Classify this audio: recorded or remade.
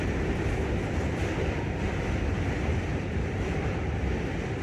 recorded